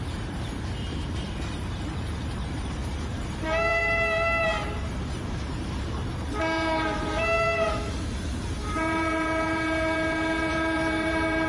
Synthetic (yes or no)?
yes